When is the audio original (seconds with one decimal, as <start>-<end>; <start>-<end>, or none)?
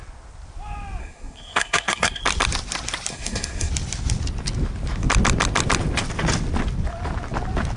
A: 0.0-1.0; 2.2-3.1; 3.7-7.8